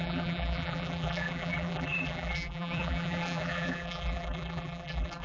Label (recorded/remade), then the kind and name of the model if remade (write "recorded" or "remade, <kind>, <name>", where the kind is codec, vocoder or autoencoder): remade, vocoder, BigVGAN v2